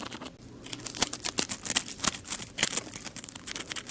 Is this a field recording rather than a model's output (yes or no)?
yes